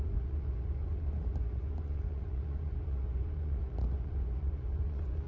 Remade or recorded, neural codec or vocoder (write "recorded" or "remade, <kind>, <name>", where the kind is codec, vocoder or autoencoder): remade, vocoder, Vocos